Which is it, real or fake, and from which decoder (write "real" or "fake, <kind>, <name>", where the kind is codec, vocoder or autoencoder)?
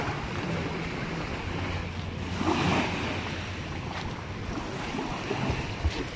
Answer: real